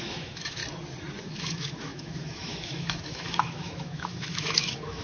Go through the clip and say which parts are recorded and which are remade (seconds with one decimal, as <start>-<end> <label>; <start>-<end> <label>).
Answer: 0.0-0.6 remade; 0.6-1.2 recorded; 1.2-5.0 remade

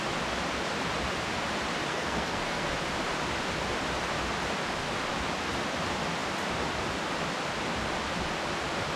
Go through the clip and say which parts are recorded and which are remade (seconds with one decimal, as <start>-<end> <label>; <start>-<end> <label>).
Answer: 0.0-1.9 recorded; 1.9-2.7 remade; 2.7-9.0 recorded

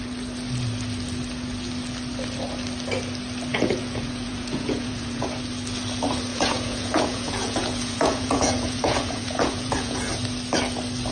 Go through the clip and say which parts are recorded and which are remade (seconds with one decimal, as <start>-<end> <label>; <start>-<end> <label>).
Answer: 0.0-3.5 recorded; 3.5-5.3 remade; 5.3-6.3 recorded; 6.3-10.1 remade; 10.1-11.1 recorded